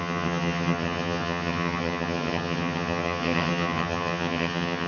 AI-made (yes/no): yes